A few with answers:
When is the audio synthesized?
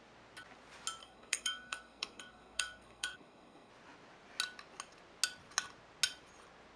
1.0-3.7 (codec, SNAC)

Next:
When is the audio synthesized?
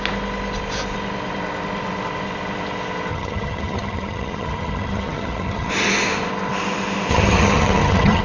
3.1-5.7 (vocoder, HiFi-GAN); 7.1-8.2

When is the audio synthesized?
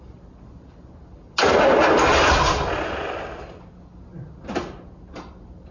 none